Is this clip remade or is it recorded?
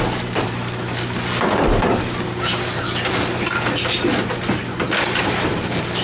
recorded